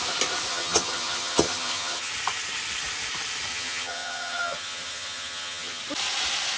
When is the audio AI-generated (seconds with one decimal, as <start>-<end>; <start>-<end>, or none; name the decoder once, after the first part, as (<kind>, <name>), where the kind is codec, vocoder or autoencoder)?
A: 0.5-2.1 (vocoder, HiFi-GAN); 3.5-5.8